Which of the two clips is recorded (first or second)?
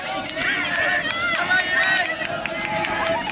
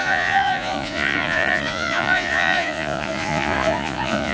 first